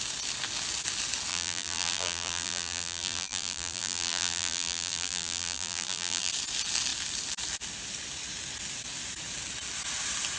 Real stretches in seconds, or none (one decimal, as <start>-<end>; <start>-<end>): 0.0-1.3; 6.3-10.4